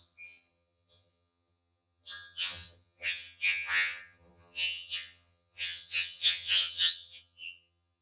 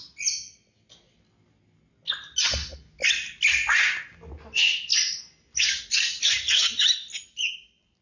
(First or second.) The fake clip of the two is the first